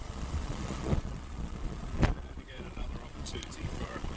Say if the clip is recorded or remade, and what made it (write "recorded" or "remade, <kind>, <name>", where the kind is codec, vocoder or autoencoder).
remade, vocoder, Vocos